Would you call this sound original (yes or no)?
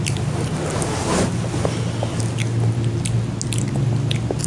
yes